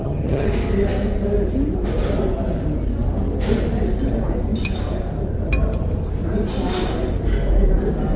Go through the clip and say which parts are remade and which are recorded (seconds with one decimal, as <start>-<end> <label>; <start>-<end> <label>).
0.0-0.5 remade; 0.5-8.2 recorded